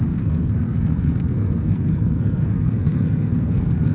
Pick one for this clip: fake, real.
fake